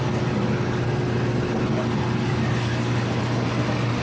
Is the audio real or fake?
real